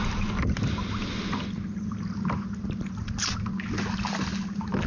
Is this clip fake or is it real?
real